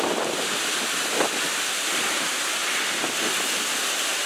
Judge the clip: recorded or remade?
recorded